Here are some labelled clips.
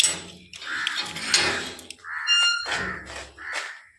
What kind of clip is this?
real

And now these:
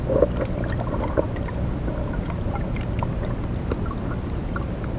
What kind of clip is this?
real